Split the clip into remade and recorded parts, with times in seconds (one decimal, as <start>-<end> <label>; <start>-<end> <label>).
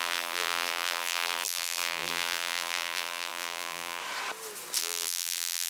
0.0-4.0 remade; 4.0-4.8 recorded; 4.8-5.7 remade